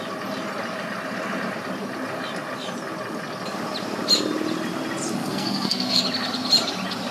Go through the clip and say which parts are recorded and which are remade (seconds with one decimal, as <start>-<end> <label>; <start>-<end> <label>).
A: 0.0-5.2 recorded; 5.2-6.0 remade; 6.0-7.1 recorded